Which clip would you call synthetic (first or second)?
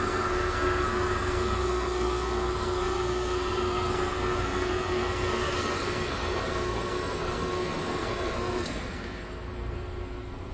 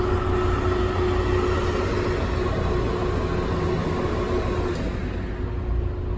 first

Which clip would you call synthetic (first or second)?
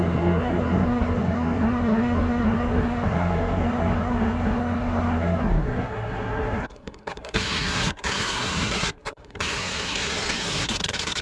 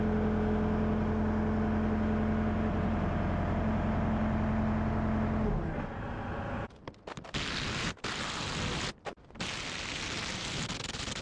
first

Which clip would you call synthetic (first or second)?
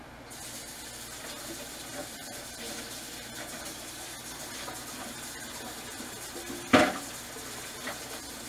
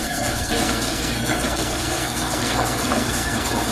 second